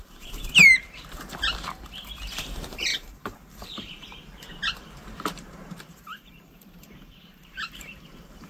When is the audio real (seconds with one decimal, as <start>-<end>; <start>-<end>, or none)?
none